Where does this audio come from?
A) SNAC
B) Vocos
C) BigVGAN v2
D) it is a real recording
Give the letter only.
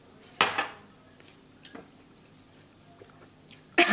D